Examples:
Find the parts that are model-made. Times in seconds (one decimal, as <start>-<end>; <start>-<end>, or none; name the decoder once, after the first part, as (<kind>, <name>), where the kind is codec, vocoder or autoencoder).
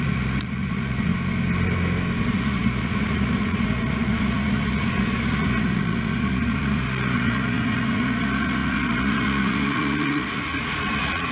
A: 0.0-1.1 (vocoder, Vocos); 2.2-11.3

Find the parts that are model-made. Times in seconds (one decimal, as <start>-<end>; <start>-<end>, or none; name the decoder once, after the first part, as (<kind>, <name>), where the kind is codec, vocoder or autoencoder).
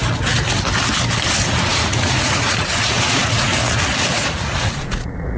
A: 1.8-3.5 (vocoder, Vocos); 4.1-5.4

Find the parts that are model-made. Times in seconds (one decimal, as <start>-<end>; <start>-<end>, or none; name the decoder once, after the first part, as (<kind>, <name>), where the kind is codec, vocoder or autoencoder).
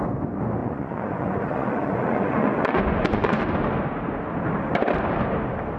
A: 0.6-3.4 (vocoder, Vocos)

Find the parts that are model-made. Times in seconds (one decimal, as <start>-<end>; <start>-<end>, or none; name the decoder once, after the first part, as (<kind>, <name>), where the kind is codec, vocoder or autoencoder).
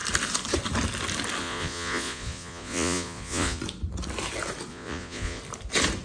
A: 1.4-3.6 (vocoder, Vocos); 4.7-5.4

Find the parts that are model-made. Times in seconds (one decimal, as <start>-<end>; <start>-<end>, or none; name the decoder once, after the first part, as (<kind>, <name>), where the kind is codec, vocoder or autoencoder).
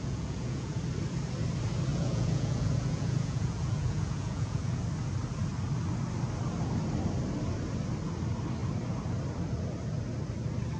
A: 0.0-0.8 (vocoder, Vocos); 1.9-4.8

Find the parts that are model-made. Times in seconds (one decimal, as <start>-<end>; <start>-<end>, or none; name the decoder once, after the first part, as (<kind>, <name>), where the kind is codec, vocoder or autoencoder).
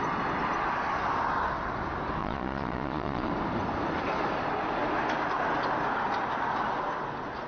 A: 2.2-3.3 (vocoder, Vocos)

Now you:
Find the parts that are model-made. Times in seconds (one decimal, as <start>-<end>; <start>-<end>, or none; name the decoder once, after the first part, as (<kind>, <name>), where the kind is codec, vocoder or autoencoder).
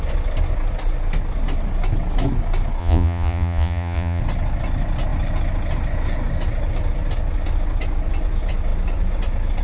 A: 2.8-4.2 (vocoder, Vocos)